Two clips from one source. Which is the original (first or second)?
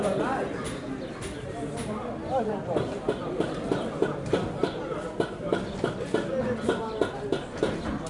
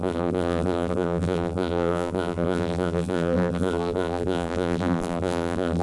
first